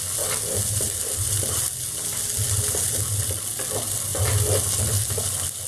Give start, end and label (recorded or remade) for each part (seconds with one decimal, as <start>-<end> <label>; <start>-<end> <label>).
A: 0.0-5.7 recorded